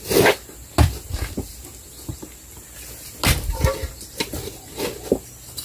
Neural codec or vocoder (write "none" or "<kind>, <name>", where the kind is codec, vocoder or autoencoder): none